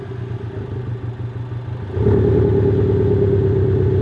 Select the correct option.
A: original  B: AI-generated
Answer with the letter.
A